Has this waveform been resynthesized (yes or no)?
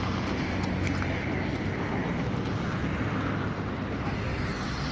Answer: no